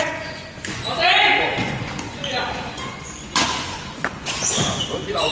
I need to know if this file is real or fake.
fake